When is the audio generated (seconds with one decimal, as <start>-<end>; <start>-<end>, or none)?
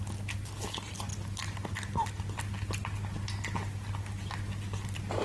none